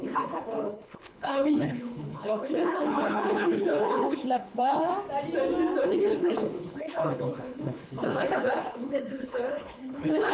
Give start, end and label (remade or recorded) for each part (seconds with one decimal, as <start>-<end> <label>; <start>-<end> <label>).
0.0-4.9 remade; 4.9-5.8 recorded; 5.8-10.3 remade